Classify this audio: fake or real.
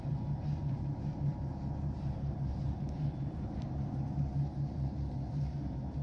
fake